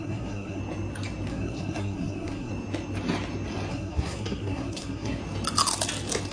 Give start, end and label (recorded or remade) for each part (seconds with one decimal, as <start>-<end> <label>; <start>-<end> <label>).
0.0-0.6 remade; 0.6-1.3 recorded; 1.3-2.5 remade; 2.5-3.7 recorded; 3.7-5.2 remade; 5.2-6.3 recorded